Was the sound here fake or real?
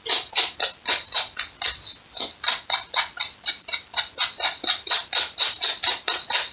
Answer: real